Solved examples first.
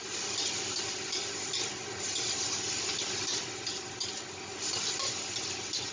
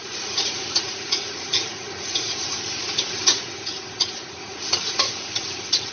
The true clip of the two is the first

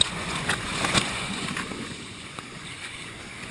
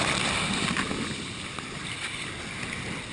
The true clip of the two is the second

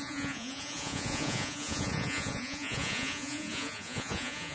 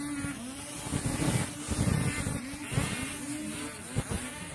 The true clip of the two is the second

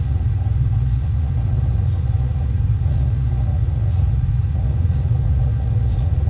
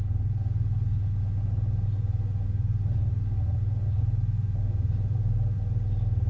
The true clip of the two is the second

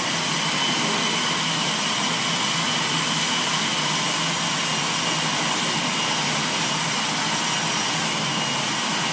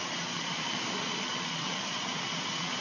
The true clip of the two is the first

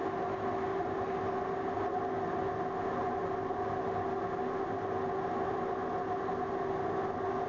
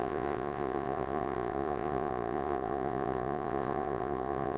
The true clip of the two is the first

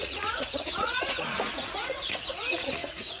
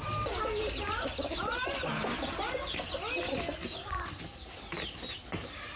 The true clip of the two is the second